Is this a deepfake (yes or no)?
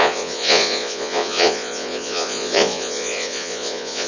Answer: yes